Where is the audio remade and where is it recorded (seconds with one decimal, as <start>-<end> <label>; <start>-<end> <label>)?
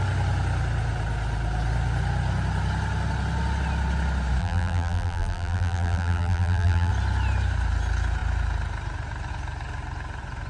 0.0-4.4 recorded; 4.4-6.9 remade; 6.9-10.5 recorded